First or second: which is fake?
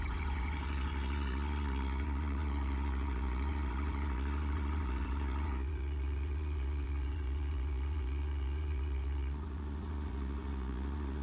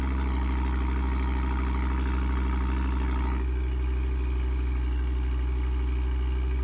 first